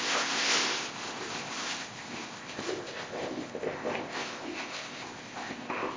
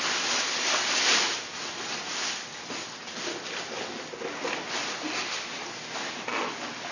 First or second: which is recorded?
second